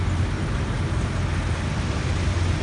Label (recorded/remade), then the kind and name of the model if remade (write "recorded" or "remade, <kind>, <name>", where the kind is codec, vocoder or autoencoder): recorded